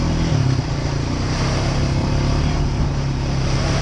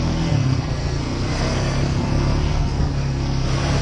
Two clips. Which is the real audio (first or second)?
first